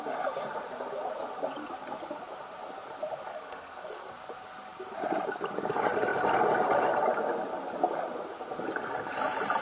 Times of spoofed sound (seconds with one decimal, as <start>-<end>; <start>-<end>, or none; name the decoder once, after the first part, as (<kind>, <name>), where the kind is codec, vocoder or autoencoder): 3.3-4.1 (codec, SNAC)